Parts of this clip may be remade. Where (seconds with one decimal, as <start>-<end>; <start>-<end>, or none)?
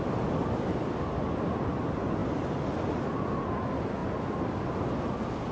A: none